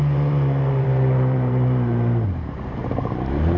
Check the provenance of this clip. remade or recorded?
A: remade